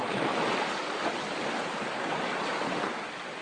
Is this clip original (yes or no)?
yes